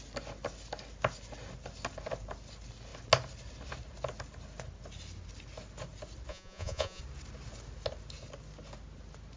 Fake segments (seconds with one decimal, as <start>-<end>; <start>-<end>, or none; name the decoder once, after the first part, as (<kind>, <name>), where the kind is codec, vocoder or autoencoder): 6.3-7.0 (vocoder, Vocos)